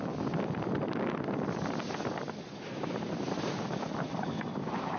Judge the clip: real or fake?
real